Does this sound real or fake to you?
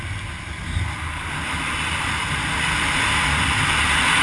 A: real